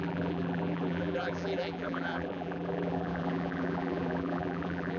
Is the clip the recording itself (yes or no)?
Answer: no